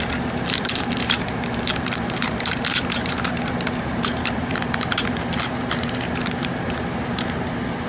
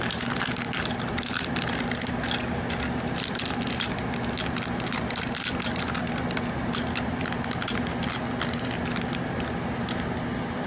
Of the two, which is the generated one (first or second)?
first